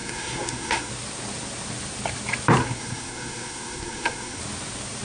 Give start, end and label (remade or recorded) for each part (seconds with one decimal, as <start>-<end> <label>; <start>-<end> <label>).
0.0-0.9 remade; 0.9-2.6 recorded; 2.6-4.4 remade; 4.4-5.0 recorded